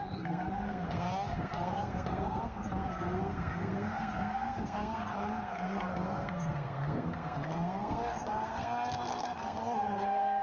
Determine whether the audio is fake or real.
fake